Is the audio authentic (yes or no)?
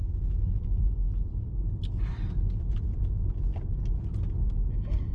yes